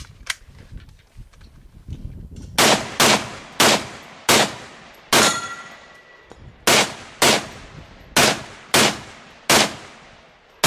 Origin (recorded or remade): recorded